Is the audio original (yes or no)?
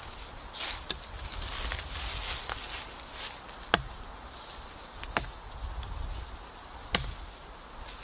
yes